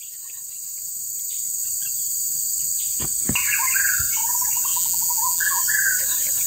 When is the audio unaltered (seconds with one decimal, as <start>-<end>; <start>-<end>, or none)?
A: 0.0-4.7; 5.6-6.5